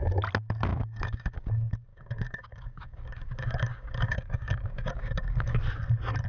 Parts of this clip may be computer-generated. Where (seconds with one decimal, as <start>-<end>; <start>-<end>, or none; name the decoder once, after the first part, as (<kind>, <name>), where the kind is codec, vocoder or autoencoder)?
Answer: 0.7-1.5 (codec, DAC); 1.9-5.6